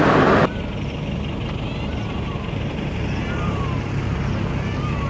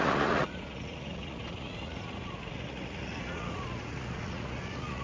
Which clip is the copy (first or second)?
second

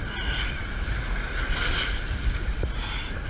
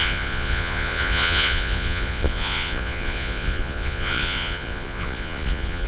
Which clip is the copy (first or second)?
second